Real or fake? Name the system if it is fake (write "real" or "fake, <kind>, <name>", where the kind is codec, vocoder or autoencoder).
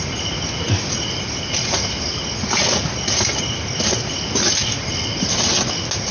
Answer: real